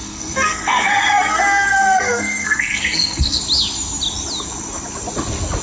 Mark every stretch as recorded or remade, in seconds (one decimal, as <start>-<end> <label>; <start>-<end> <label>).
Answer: 0.0-3.4 remade; 3.4-5.6 recorded